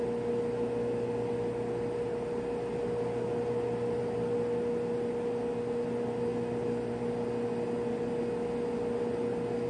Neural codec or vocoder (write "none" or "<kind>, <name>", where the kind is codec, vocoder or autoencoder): none